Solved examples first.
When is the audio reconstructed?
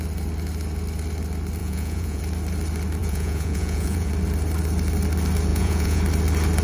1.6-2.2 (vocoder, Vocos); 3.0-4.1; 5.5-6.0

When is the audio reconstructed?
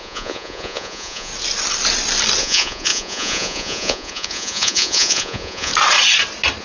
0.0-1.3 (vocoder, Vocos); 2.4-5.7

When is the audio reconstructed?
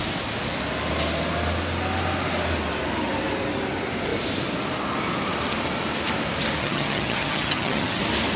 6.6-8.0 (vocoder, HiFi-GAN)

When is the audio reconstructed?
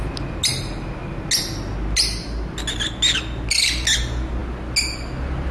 none